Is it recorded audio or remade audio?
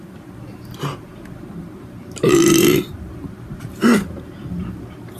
remade